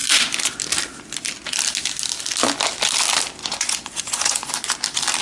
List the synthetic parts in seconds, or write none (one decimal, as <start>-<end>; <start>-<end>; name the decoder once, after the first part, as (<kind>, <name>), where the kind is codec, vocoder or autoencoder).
3.4-4.5 (vocoder, Vocos)